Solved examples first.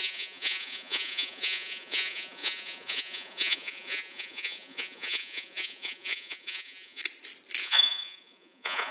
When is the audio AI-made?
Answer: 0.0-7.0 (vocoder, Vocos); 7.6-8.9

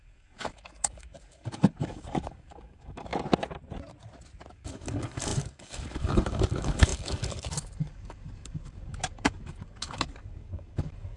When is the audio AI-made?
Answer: 0.0-3.1 (codec, DAC); 4.5-11.2

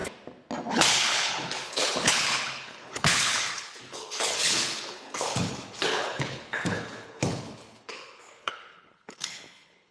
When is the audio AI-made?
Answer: 0.7-9.9 (codec, HILCodec)

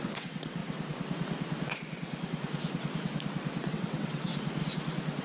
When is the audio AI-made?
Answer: 0.0-0.6 (vocoder, WaveNeXt); 3.7-4.3